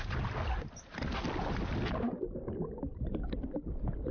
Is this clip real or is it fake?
real